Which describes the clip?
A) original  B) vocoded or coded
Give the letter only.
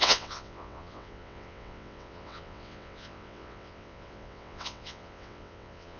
B